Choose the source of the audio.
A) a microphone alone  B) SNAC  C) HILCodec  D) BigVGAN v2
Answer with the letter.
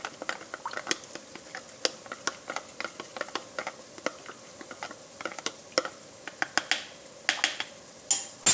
A